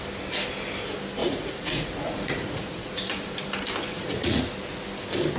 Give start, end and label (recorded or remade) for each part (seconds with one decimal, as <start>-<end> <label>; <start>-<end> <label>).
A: 0.0-1.2 recorded; 1.2-3.2 remade; 3.2-3.9 recorded; 3.9-4.4 remade; 4.4-5.4 recorded